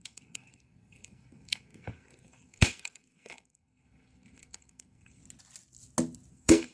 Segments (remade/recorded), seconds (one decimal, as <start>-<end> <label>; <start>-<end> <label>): 0.0-5.2 remade; 5.2-6.3 recorded; 6.3-6.7 remade